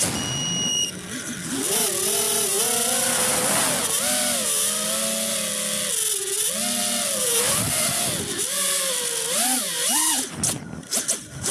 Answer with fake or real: real